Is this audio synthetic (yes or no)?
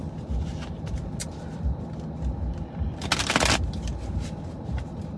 no